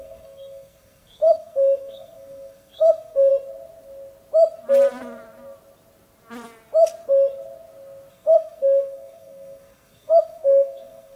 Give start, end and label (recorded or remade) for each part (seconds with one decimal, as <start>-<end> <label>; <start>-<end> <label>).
0.0-3.3 remade; 3.3-8.1 recorded; 8.1-11.2 remade